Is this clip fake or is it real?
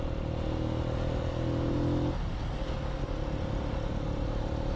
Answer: real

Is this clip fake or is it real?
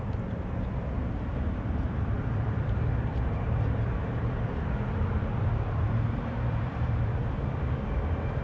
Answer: fake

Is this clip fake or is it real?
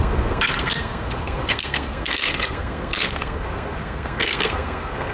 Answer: fake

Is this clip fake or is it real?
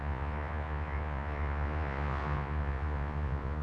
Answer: fake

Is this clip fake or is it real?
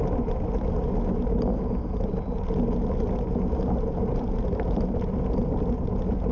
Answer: real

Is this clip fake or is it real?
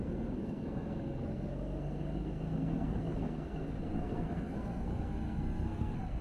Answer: fake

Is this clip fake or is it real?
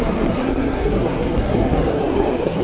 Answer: fake